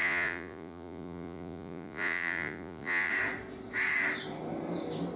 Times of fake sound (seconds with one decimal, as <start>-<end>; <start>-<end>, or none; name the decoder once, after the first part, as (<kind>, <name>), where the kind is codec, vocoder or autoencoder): 0.0-3.1 (vocoder, Vocos)